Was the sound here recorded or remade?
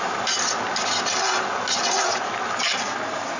recorded